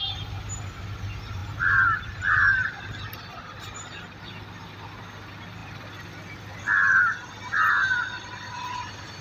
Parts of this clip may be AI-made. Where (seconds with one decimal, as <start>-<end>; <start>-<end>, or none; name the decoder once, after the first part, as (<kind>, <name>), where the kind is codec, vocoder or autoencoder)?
none